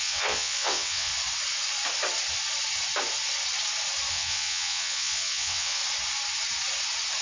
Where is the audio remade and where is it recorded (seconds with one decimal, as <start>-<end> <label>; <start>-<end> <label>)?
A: 0.0-1.1 remade; 1.1-4.1 recorded; 4.1-5.8 remade; 5.8-7.2 recorded